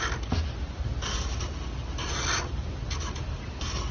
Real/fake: real